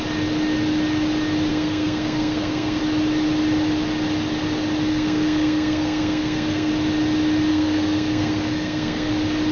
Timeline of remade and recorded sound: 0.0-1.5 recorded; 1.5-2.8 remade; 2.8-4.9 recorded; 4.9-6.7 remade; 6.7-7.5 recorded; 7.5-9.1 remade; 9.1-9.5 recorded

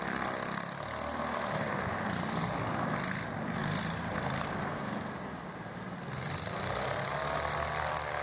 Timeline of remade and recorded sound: 0.0-8.2 recorded